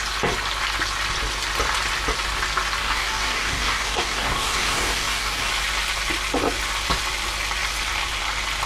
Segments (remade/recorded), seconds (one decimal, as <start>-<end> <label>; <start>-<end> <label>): 0.0-2.8 recorded; 2.8-5.5 remade; 5.5-8.7 recorded